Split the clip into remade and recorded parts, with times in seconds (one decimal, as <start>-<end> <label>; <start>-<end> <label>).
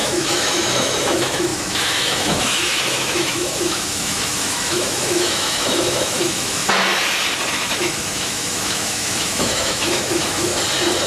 0.0-6.6 remade; 6.6-7.5 recorded; 7.5-10.5 remade; 10.5-11.1 recorded